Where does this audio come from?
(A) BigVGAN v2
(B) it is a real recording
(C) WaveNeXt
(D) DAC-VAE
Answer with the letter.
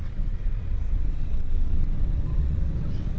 C